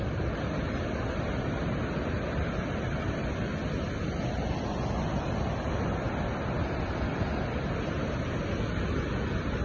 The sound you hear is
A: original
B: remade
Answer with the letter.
A